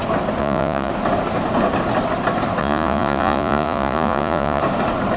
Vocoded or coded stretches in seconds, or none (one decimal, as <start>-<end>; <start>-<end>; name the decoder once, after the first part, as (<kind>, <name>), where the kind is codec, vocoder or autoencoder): 0.4-0.9 (vocoder, Vocos); 2.6-4.6